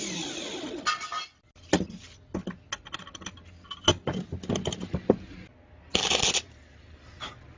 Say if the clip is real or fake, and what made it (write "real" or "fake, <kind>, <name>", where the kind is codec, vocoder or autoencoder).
real